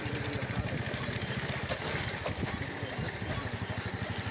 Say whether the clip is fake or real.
real